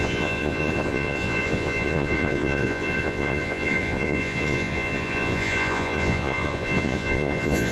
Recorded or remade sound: remade